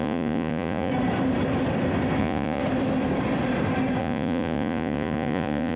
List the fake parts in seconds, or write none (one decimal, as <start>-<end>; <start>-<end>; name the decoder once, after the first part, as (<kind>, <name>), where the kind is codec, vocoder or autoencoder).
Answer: 0.0-0.9 (vocoder, Vocos); 2.2-2.6; 4.0-5.8